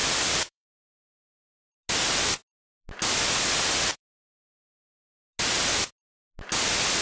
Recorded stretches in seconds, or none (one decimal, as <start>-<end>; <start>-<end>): 0.9-7.0